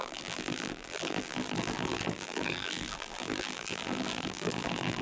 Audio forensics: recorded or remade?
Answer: remade